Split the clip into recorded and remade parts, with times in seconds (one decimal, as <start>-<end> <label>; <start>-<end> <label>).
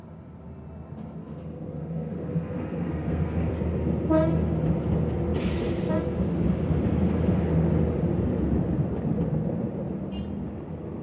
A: 0.0-1.2 recorded; 1.2-3.5 remade; 3.5-11.0 recorded